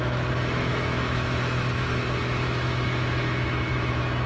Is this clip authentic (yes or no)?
no